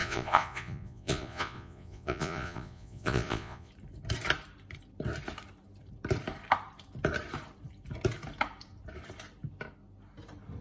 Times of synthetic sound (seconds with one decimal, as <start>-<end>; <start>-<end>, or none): 0.0-3.7